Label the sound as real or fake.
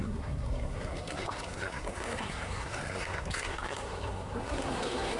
fake